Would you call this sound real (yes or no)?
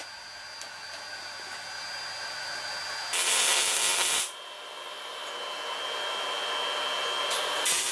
yes